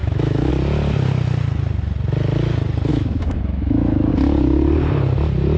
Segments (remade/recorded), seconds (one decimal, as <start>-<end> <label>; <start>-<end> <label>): 0.0-0.5 remade; 0.5-2.9 recorded; 2.9-4.1 remade; 4.1-5.6 recorded